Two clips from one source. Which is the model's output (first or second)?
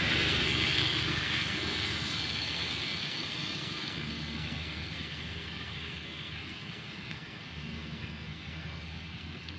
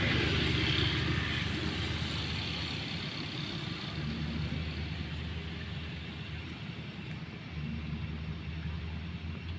first